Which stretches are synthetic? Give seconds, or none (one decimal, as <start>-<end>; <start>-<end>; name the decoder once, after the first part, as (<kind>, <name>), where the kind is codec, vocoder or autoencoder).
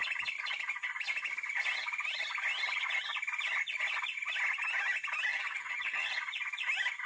5.3-6.1 (vocoder, HiFi-GAN)